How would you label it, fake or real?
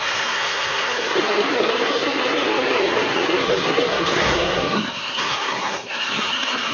fake